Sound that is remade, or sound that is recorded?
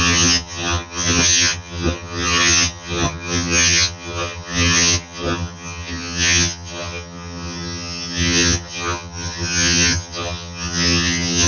remade